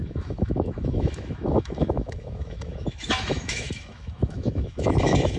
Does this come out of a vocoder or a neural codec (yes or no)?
yes